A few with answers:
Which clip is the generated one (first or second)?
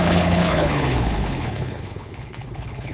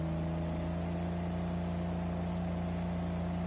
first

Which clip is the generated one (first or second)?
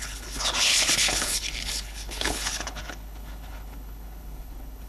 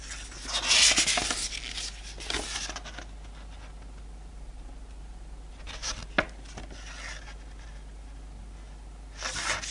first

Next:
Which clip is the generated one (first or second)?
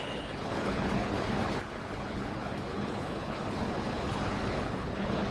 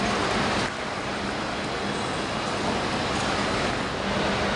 first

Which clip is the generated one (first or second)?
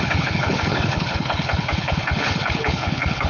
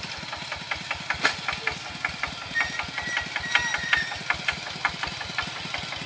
first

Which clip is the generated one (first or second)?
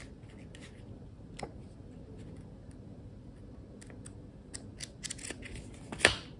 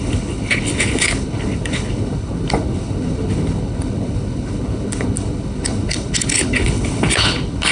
second